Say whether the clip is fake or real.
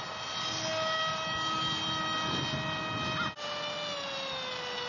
real